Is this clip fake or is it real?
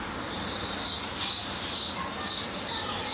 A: real